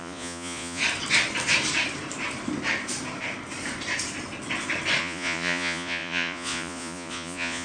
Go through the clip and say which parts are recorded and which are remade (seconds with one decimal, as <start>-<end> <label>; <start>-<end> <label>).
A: 0.0-0.8 remade; 0.8-5.0 recorded; 5.0-7.6 remade